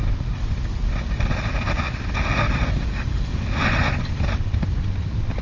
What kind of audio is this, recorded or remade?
recorded